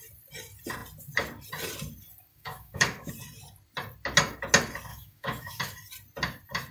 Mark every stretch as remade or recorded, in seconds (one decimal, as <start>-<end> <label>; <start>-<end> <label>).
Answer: 0.0-2.3 recorded; 2.3-3.1 remade; 3.1-4.9 recorded; 4.9-5.6 remade; 5.6-6.7 recorded